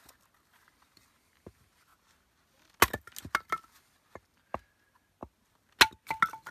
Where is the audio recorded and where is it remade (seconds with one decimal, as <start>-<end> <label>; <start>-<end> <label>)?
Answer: 0.0-6.5 recorded

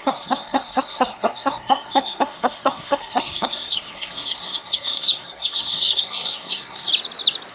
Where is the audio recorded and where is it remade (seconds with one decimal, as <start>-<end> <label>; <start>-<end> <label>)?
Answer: 0.0-6.9 remade; 6.9-7.5 recorded

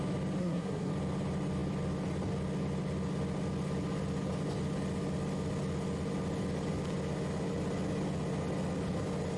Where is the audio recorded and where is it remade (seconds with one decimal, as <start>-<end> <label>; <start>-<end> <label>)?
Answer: 0.0-0.4 recorded; 0.4-0.9 remade; 0.9-9.4 recorded

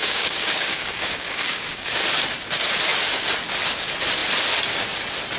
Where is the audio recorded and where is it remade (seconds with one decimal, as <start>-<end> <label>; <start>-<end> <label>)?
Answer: 0.0-2.0 remade; 2.0-5.4 recorded

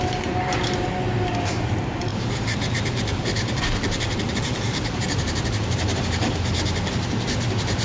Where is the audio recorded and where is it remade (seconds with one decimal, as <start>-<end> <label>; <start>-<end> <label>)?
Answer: 0.0-2.1 recorded; 2.1-6.0 remade; 6.0-7.8 recorded

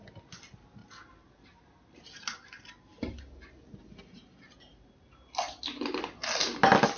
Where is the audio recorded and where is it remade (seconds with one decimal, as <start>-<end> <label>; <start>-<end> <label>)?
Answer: 0.0-7.0 recorded